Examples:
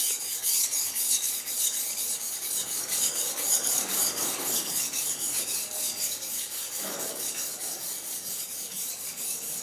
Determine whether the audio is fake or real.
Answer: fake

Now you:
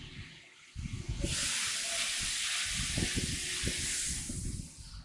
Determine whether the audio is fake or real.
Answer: real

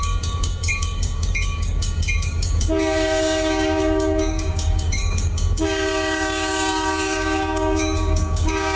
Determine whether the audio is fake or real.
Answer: fake